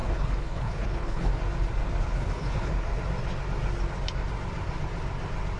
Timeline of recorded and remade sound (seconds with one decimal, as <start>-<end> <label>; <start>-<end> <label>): 0.0-1.3 remade; 1.3-2.0 recorded; 2.0-2.7 remade; 2.7-5.6 recorded